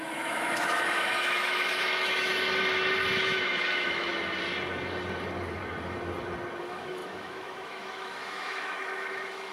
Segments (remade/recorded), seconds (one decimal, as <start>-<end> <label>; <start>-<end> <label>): 0.0-2.3 remade; 2.3-3.2 recorded; 3.2-4.1 remade; 4.1-6.6 recorded; 6.6-9.5 remade